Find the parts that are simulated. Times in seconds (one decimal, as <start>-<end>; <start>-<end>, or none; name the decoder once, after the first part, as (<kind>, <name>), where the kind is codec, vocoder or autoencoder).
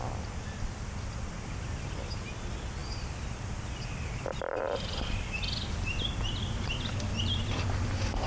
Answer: 2.8-5.4 (vocoder, BigVGAN v2)